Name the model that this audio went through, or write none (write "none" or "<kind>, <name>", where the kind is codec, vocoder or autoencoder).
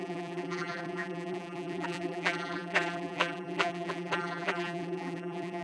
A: vocoder, BigVGAN v2